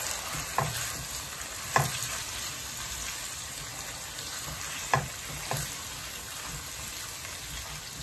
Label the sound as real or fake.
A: real